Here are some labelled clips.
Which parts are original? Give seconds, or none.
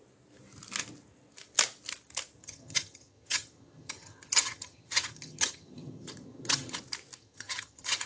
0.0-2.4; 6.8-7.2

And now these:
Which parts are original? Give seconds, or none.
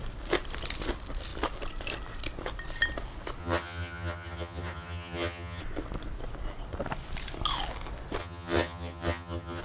0.0-3.4; 5.6-8.2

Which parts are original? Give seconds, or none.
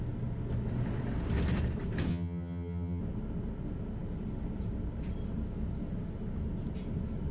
0.0-2.1; 3.0-7.3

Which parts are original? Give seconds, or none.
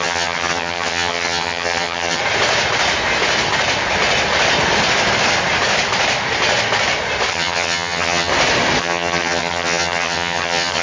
2.2-7.3; 8.3-8.8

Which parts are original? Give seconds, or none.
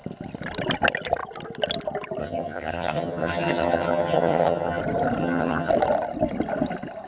0.0-2.2; 4.8-5.2; 5.7-7.1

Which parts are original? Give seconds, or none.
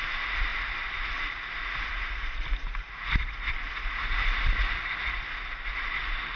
0.0-6.4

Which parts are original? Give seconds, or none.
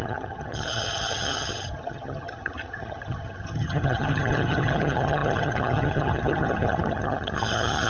none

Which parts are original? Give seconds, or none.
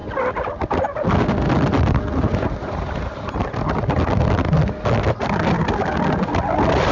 0.0-6.9